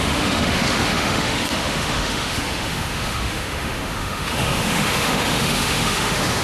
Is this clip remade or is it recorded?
remade